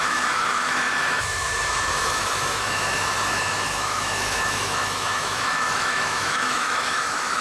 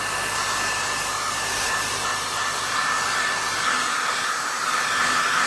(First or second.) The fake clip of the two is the first